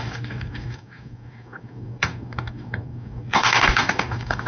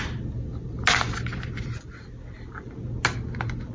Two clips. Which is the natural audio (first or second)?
second